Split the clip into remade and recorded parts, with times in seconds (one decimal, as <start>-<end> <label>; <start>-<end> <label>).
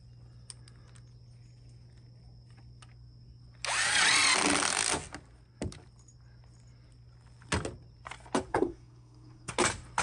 0.0-8.5 recorded; 8.5-9.5 remade; 9.5-10.0 recorded